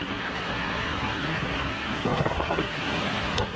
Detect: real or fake fake